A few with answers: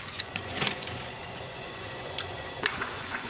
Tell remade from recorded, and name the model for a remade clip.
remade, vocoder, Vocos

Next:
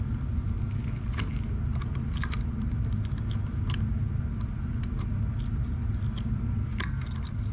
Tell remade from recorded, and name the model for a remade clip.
recorded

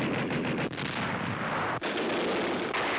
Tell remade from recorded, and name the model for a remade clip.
recorded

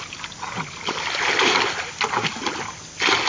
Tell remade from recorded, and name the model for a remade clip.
recorded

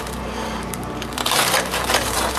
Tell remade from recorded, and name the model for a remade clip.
remade, vocoder, BigVGAN v2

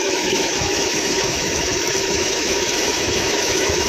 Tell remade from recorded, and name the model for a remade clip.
remade, autoencoder, DAC-VAE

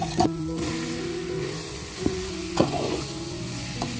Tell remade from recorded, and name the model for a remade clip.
remade, vocoder, Vocos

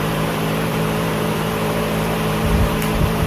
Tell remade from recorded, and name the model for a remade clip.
remade, vocoder, BigVGAN v2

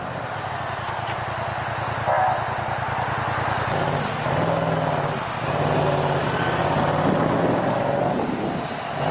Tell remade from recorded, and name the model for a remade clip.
recorded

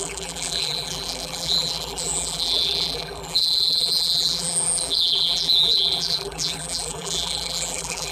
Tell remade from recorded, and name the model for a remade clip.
remade, vocoder, BigVGAN v2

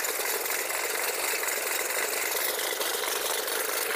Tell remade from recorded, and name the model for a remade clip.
recorded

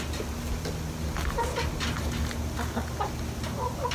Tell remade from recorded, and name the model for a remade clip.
recorded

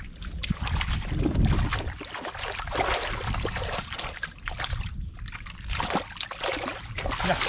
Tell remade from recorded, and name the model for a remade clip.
recorded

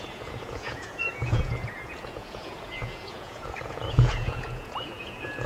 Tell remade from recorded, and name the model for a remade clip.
remade, vocoder, Vocos